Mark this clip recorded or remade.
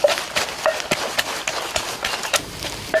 recorded